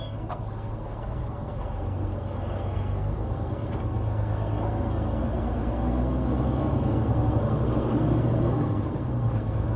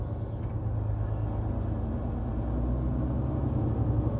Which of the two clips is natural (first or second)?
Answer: second